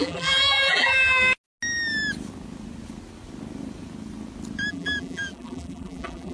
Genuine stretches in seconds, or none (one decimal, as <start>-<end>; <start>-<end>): 1.2-4.7